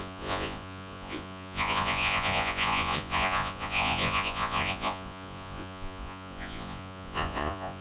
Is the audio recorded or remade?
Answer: remade